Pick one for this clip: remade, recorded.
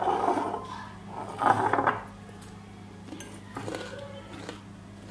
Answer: recorded